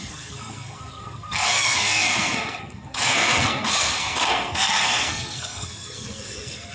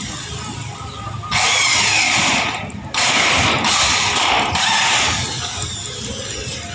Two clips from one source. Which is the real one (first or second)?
second